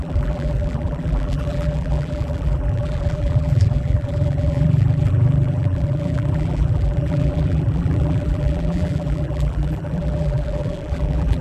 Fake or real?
fake